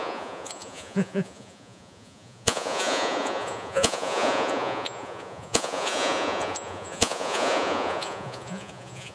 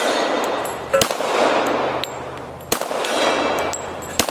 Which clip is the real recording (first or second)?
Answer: second